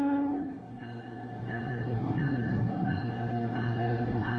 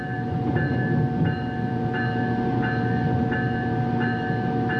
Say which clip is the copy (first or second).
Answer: first